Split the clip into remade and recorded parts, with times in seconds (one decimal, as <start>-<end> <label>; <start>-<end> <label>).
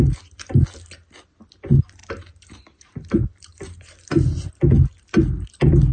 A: 0.0-2.0 recorded; 2.0-4.5 remade; 4.5-5.9 recorded